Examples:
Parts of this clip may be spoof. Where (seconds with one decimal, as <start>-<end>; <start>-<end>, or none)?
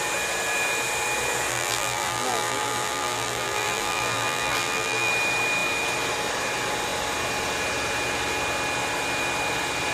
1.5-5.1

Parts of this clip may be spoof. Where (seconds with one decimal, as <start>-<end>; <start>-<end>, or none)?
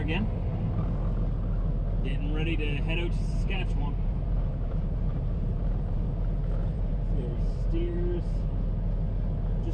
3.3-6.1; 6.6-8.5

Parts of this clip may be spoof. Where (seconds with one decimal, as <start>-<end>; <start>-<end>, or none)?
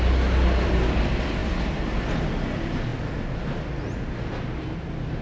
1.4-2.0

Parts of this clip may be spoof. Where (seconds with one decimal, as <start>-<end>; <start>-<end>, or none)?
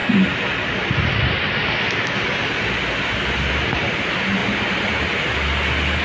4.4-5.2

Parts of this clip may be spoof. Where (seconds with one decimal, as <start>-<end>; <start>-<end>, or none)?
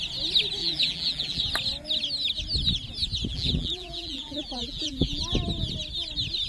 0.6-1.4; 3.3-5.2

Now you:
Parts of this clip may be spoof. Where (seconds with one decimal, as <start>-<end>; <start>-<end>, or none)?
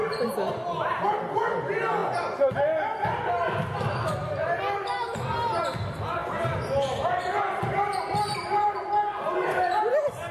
none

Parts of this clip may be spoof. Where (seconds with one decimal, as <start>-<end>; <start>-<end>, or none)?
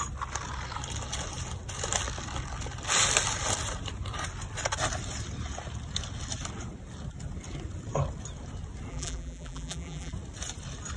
8.9-10.1